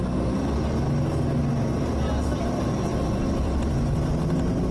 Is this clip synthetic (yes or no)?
no